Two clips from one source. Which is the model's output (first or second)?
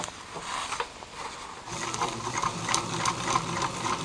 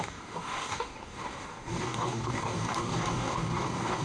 second